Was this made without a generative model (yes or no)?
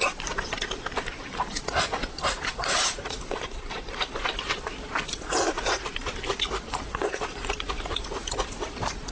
yes